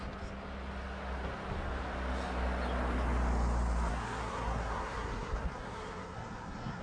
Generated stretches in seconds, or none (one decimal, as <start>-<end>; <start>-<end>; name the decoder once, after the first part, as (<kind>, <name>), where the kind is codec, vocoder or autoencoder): 3.9-6.8 (codec, SNAC)